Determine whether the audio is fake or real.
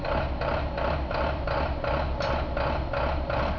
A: real